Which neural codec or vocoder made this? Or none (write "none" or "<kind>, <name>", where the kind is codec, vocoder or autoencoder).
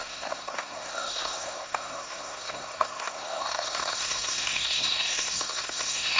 codec, SNAC